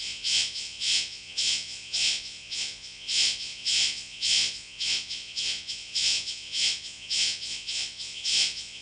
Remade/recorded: remade